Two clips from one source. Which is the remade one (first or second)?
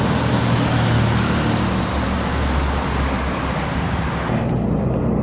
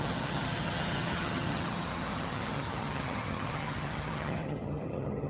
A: second